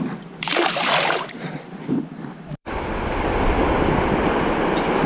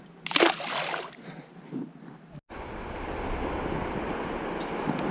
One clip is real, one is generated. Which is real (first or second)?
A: second